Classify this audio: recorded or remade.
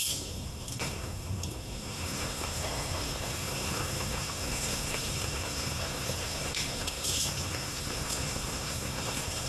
remade